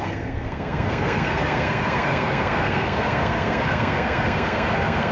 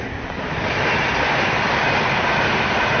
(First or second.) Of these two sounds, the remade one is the first